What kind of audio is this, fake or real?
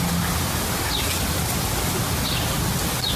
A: real